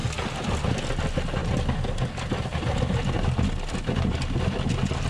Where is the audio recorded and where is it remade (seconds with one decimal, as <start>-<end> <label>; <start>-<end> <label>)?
0.0-5.1 recorded